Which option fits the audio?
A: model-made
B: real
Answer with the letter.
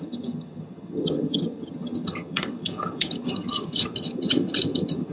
A